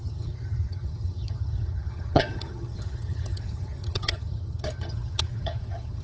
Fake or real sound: fake